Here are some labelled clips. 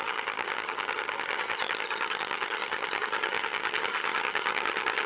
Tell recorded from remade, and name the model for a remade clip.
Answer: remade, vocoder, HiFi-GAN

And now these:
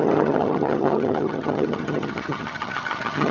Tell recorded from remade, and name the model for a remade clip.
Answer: remade, vocoder, HiFi-GAN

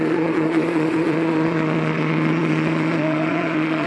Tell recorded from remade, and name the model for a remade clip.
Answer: remade, vocoder, Vocos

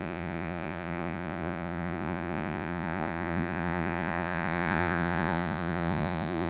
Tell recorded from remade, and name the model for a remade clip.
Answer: remade, vocoder, Vocos